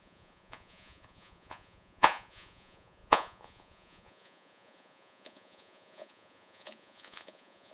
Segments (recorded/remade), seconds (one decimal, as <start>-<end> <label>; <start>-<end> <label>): 0.0-7.7 remade

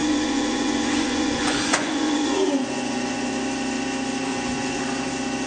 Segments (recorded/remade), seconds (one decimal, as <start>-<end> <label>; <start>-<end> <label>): 0.0-3.3 remade; 3.3-4.3 recorded; 4.3-4.8 remade; 4.8-5.5 recorded